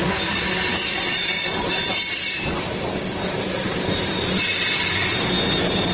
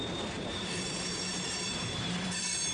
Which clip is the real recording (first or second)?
first